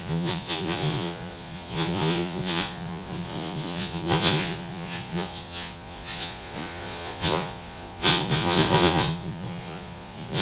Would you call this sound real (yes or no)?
no